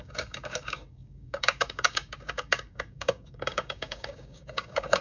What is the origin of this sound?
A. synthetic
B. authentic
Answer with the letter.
A